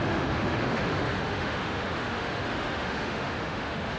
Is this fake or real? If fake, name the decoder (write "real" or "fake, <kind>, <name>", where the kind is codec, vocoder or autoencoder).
fake, autoencoder, DAC-VAE